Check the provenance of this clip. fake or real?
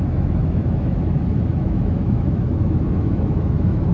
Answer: fake